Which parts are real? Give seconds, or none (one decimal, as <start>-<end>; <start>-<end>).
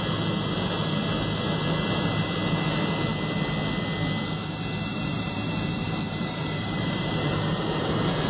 0.0-4.9; 7.9-8.3